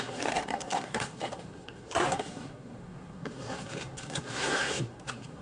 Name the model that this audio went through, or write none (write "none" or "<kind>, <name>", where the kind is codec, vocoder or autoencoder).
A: codec, SNAC